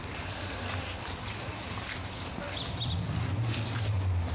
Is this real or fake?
fake